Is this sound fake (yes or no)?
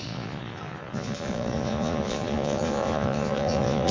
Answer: yes